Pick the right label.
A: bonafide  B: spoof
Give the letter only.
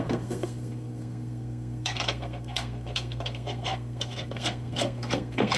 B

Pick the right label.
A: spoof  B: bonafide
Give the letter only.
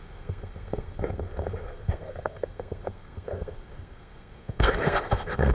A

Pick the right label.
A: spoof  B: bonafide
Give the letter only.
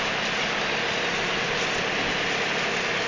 B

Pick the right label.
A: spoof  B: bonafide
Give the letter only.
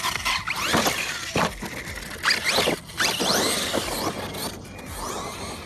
B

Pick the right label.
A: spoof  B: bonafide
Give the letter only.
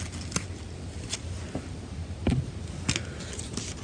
B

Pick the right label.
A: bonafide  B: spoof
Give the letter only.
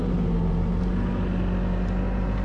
A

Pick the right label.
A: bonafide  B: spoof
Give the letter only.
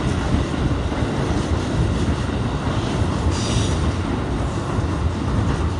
A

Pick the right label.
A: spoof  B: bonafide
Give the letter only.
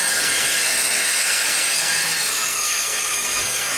A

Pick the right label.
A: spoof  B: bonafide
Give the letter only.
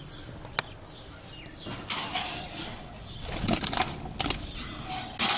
B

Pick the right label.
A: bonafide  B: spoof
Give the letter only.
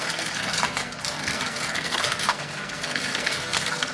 B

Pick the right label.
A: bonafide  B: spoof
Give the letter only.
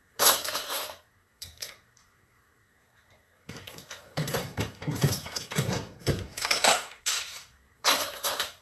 B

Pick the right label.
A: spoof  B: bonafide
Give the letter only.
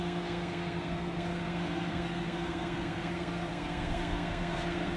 A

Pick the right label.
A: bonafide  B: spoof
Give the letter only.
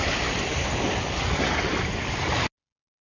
A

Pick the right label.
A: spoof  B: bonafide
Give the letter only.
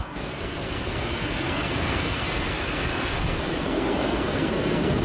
A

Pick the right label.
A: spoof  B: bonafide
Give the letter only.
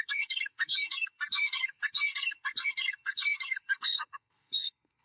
A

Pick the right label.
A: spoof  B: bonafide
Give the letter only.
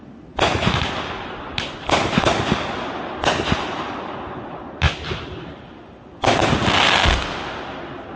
B